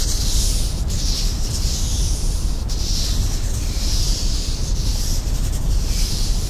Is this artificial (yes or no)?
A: no